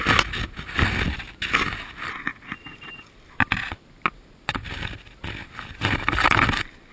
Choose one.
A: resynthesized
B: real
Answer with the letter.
B